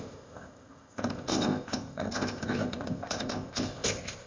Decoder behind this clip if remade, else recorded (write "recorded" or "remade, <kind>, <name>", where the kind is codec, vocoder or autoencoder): remade, codec, ZipCodec